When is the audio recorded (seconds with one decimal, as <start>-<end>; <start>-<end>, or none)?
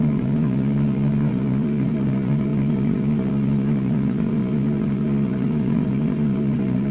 none